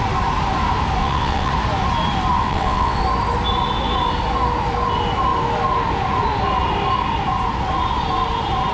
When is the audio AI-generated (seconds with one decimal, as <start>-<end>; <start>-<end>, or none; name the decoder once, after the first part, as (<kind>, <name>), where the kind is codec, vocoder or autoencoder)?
1.0-1.5 (vocoder, WaveNeXt); 2.4-3.0